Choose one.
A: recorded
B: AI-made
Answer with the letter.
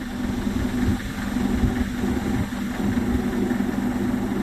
A